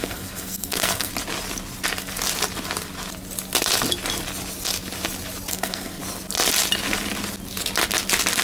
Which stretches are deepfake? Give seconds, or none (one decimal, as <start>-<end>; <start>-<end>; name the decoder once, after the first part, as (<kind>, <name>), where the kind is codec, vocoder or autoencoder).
0.0-1.1 (codec, SNAC); 5.5-6.0